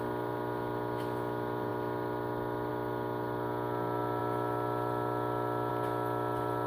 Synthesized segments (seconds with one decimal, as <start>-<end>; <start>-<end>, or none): 1.7-2.7; 4.2-5.7